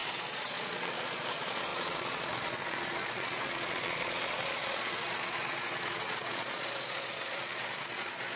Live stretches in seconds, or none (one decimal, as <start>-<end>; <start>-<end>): none